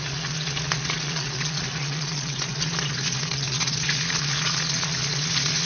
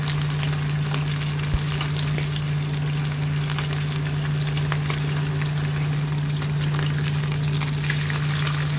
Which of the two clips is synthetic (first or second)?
first